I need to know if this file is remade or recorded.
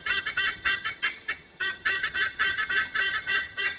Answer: remade